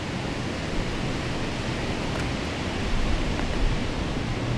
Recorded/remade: recorded